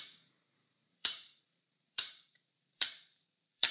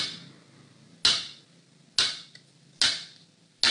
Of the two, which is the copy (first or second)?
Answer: first